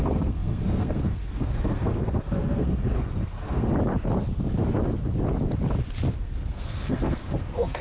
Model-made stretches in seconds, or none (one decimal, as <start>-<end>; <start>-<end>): 0.0-3.7; 6.2-7.8